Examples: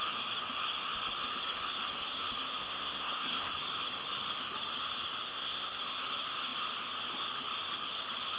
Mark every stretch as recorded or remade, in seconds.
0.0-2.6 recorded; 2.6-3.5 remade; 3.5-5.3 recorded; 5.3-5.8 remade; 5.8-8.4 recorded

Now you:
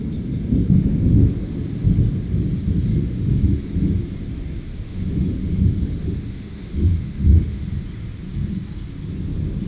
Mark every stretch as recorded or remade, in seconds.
0.0-0.6 recorded; 0.6-1.2 remade; 1.2-2.9 recorded; 2.9-3.6 remade; 3.6-4.7 recorded; 4.7-7.7 remade; 7.7-9.7 recorded

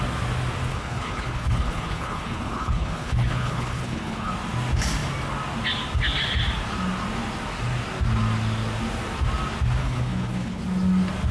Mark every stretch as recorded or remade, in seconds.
0.0-0.7 recorded; 0.7-4.3 remade; 4.3-9.8 recorded; 9.8-10.6 remade; 10.6-11.3 recorded

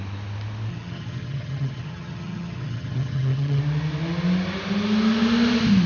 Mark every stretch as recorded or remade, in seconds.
0.0-0.7 recorded; 0.7-3.6 remade; 3.6-5.9 recorded

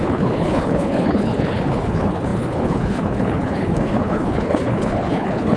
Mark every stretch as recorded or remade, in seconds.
0.0-5.6 remade

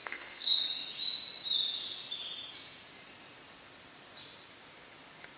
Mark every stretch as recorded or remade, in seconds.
0.0-0.6 remade; 0.6-5.4 recorded

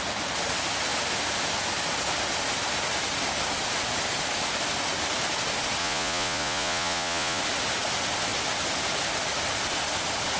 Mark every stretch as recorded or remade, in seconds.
0.0-5.8 recorded; 5.8-7.4 remade; 7.4-10.4 recorded

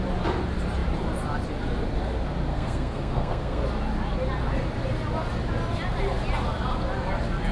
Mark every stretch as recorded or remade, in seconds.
0.0-2.5 recorded; 2.5-3.6 remade; 3.6-7.5 recorded